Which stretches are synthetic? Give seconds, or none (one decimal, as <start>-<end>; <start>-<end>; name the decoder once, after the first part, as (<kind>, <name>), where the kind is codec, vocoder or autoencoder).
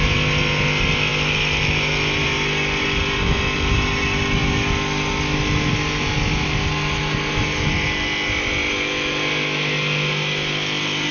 none